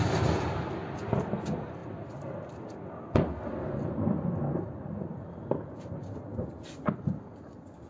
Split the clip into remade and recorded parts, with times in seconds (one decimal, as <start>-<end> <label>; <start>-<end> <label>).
0.0-7.9 recorded